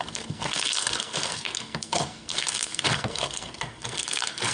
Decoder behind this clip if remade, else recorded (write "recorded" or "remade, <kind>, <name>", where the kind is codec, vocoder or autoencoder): remade, codec, SNAC